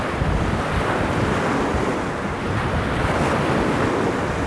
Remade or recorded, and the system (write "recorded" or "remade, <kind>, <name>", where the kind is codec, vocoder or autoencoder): recorded